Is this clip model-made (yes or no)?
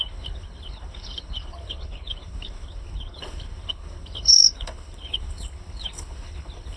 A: yes